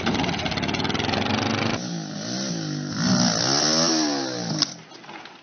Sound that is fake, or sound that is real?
real